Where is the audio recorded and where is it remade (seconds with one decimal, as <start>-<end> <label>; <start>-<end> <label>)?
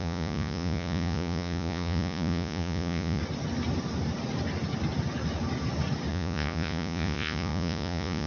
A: 0.0-3.2 remade; 3.2-6.1 recorded; 6.1-8.3 remade